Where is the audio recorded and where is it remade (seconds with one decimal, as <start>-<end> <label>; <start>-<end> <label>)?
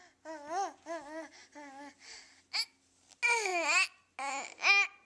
0.0-5.1 recorded